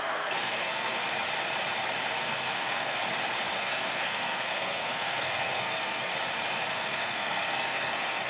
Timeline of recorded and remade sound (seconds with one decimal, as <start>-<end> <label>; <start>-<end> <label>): 0.0-1.0 remade; 1.0-2.2 recorded; 2.2-3.0 remade; 3.0-3.6 recorded; 3.6-6.1 remade; 6.1-6.7 recorded; 6.7-8.3 remade